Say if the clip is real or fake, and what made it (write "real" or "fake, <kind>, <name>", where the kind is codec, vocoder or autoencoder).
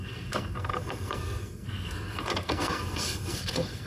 fake, codec, SNAC